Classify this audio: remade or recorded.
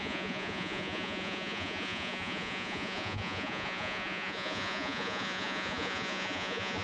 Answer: remade